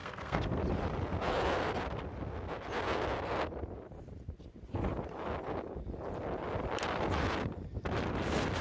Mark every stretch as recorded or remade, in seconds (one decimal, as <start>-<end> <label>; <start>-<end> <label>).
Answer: 0.0-0.6 remade; 0.6-8.6 recorded